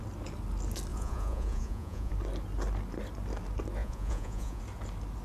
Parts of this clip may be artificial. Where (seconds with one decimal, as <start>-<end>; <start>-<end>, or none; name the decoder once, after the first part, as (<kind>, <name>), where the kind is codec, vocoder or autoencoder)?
0.9-2.1 (vocoder, Vocos); 3.8-4.6